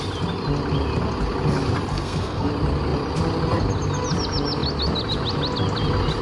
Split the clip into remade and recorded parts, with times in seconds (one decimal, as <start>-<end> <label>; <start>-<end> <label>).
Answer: 0.0-1.9 recorded; 1.9-2.5 remade; 2.5-6.2 recorded